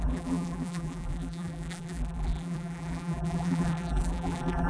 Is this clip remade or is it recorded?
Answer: remade